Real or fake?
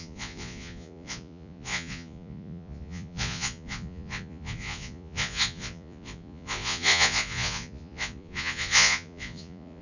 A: fake